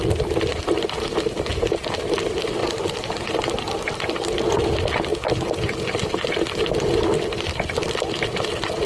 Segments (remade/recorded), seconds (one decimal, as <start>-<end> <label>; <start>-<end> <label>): 0.0-0.5 recorded; 0.5-1.5 remade; 1.5-2.6 recorded; 2.6-4.4 remade; 4.4-8.9 recorded